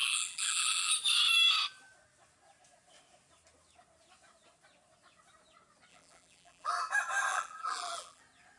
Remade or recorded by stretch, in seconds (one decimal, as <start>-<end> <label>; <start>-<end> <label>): 0.0-0.9 remade; 0.9-5.9 recorded; 5.9-6.7 remade; 6.7-7.3 recorded; 7.3-8.2 remade; 8.2-8.6 recorded